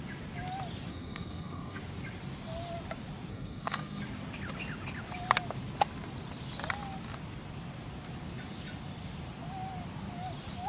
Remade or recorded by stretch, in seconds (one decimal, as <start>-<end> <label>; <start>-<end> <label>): 0.0-0.9 recorded; 0.9-1.8 remade; 1.8-3.3 recorded; 3.3-4.0 remade; 4.0-10.7 recorded